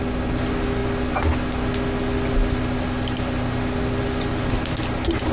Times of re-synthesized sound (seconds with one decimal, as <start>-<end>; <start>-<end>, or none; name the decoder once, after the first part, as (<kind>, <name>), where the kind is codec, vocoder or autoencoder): none